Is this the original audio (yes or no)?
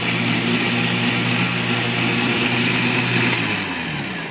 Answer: yes